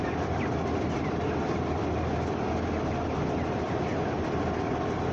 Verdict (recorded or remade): recorded